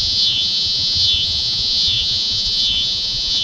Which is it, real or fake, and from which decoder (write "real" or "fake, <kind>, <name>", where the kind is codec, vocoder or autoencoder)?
fake, vocoder, Vocos